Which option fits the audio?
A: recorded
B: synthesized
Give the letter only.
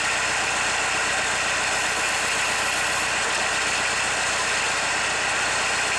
A